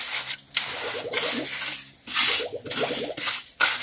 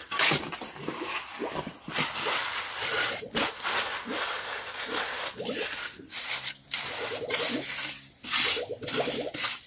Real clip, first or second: first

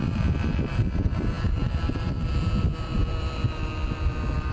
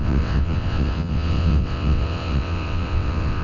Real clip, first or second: first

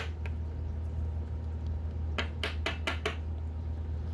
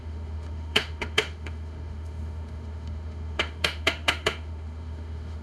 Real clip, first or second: first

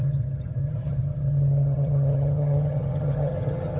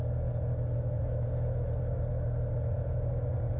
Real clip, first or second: second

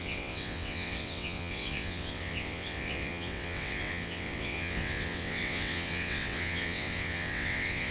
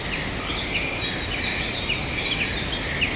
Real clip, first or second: second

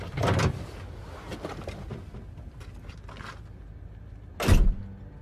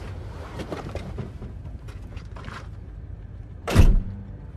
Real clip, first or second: first